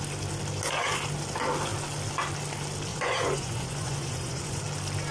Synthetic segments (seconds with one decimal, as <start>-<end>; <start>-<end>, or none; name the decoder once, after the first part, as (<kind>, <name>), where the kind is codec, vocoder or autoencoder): 2.9-4.6 (vocoder, Vocos)